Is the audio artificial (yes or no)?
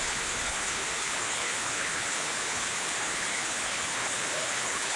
yes